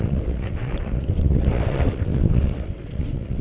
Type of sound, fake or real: fake